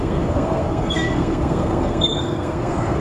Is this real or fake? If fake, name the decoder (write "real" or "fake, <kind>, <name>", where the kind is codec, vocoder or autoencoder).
fake, codec, SNAC